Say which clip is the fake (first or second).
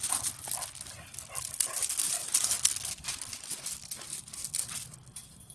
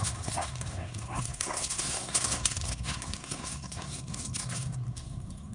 second